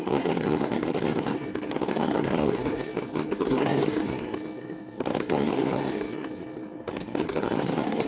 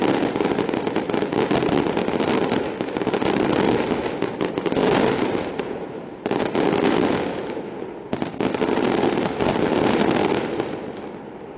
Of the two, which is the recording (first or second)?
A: second